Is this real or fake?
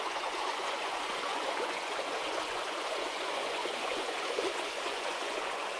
fake